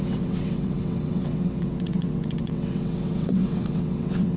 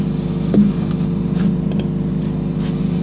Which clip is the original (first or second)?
second